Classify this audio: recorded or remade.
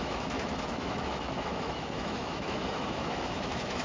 remade